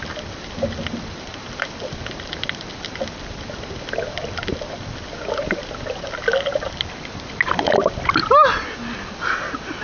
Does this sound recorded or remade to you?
recorded